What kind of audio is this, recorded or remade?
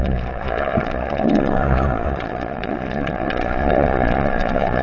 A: remade